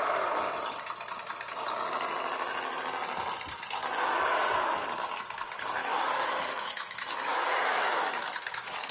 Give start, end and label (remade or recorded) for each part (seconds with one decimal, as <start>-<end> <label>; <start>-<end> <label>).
0.0-5.8 recorded; 5.8-8.9 remade